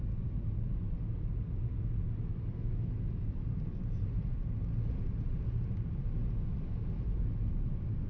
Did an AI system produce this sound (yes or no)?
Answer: no